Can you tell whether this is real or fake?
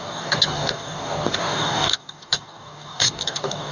fake